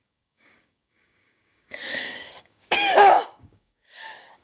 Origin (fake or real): fake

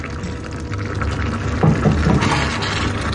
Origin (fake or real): real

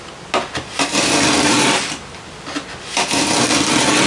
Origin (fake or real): real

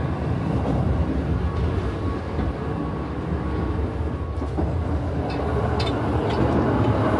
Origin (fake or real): real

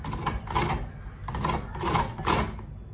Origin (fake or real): real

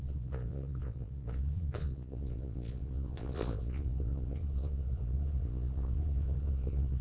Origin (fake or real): fake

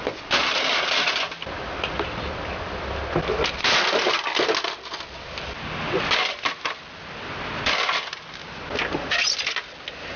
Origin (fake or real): real